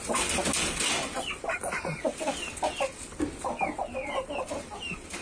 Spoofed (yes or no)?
no